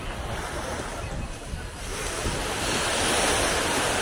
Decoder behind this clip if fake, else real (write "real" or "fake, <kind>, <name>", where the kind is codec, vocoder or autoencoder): real